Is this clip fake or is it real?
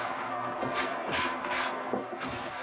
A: fake